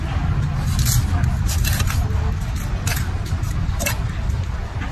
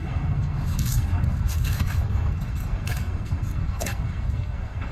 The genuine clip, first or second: first